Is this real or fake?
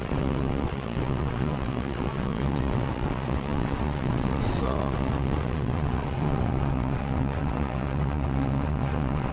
fake